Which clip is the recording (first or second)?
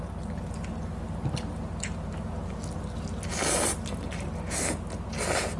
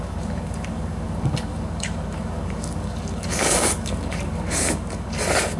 first